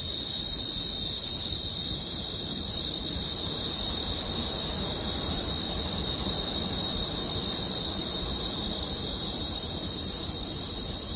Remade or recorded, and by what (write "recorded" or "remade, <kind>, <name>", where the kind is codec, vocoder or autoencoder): remade, vocoder, BigVGAN v2